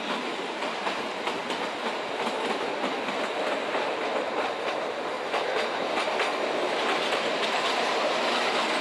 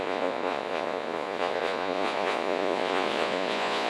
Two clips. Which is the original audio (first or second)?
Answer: first